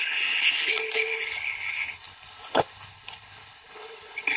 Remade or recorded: remade